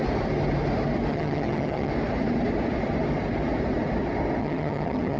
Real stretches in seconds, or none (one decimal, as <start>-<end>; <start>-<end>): 0.0-1.1; 1.9-4.4